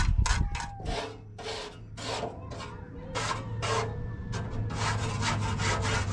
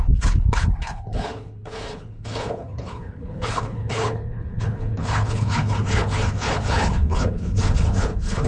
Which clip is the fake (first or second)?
second